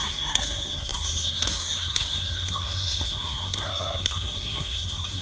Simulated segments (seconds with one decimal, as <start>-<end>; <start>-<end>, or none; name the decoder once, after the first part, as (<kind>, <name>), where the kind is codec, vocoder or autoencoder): 0.0-5.2 (codec, SNAC)